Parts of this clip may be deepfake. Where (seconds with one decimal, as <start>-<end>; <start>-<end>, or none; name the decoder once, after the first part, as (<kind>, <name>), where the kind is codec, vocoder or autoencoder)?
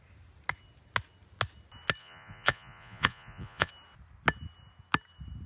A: 2.0-3.7 (vocoder, Vocos)